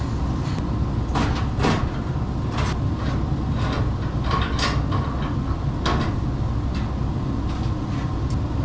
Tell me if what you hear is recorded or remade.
recorded